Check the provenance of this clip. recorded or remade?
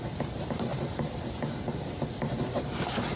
recorded